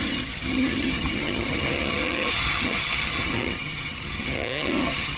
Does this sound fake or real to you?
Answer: fake